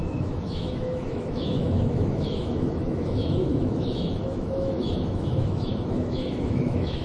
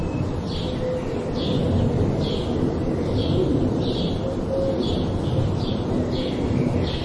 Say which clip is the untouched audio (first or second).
second